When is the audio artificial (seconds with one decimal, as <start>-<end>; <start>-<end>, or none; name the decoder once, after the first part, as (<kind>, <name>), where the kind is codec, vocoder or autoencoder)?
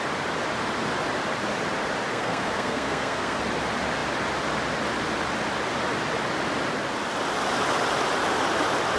2.1-3.4 (codec, SNAC)